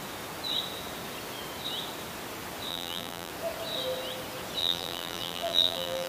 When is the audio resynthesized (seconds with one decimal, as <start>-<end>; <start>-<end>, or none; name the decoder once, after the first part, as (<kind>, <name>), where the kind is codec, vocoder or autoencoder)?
2.7-3.3 (vocoder, BigVGAN v2); 4.6-6.1